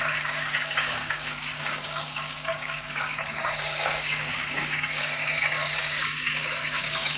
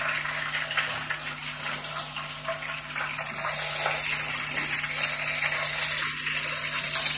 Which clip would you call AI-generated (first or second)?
first